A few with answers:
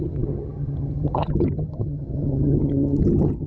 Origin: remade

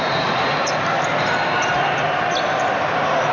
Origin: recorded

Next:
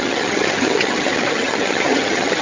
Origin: remade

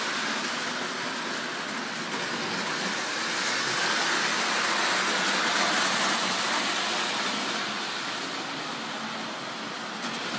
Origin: recorded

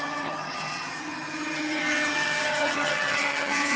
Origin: remade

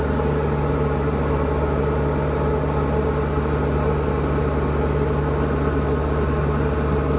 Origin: recorded